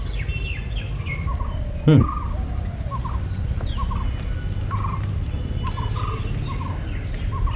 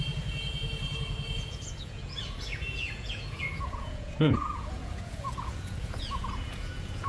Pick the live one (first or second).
first